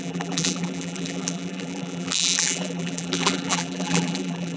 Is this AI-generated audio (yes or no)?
yes